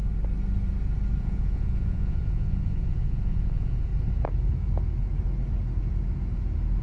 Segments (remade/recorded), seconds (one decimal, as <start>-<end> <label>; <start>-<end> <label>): 0.0-1.2 recorded; 1.2-3.9 remade; 3.9-6.8 recorded